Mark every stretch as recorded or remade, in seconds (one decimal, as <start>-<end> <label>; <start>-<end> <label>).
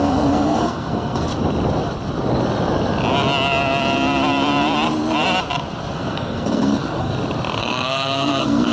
0.0-1.3 remade; 1.3-5.9 recorded; 5.9-7.1 remade; 7.1-7.6 recorded; 7.6-8.7 remade